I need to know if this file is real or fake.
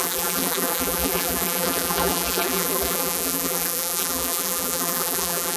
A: fake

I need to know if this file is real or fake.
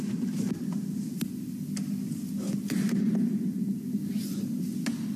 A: real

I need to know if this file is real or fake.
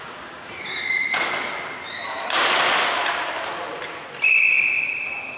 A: fake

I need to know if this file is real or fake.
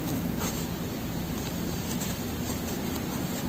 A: real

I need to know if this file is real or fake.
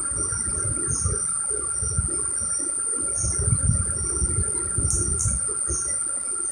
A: real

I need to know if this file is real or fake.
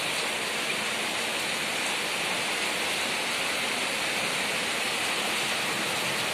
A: real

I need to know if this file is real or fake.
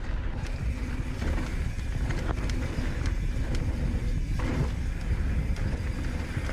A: real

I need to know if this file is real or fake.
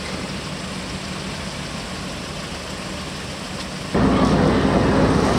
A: real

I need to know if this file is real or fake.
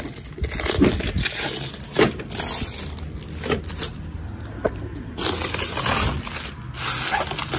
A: real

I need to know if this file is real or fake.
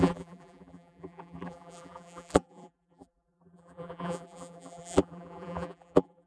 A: fake